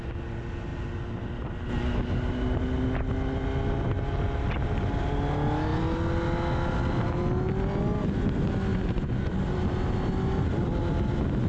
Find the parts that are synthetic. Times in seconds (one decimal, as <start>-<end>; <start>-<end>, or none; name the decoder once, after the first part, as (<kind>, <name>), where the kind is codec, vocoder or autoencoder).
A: 8.7-9.3 (vocoder, Vocos)